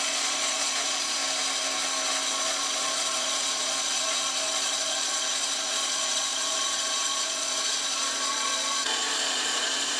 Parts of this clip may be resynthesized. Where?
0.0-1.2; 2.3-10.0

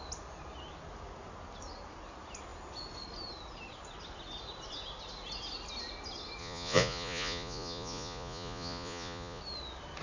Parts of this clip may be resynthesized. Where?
6.4-9.4

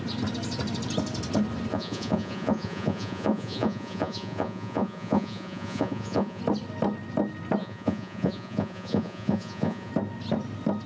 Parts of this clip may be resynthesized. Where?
1.7-6.4; 7.6-9.9

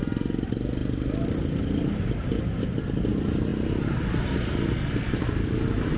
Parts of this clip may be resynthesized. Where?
none

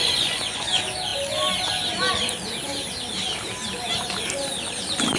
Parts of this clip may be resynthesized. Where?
0.0-0.7

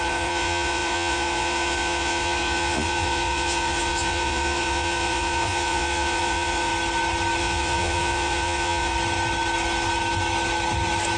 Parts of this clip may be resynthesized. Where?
0.0-6.7; 7.4-8.9